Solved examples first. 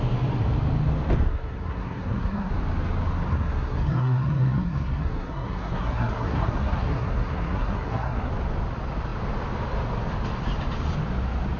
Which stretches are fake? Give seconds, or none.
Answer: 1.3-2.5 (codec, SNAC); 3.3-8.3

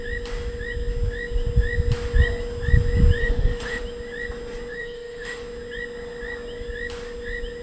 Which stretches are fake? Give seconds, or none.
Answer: 3.2-3.8 (autoencoder, DAC-VAE); 4.7-5.4

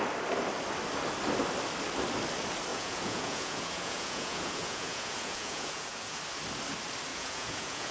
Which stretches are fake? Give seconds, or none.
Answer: 2.7-6.2 (vocoder, Vocos); 7.1-7.9

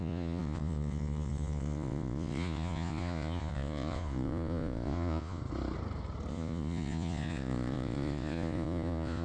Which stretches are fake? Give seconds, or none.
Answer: 0.0-5.4 (vocoder, Vocos); 6.3-9.2

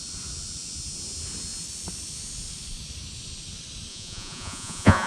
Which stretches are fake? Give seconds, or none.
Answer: 3.9-5.1 (vocoder, Vocos)

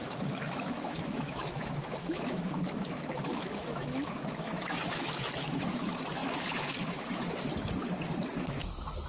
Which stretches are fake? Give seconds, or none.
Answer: 0.0-7.5 (autoencoder, DAC-VAE); 8.5-9.1